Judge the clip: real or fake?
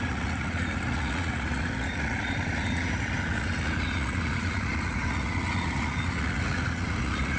fake